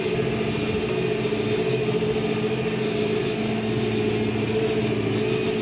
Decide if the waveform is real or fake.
real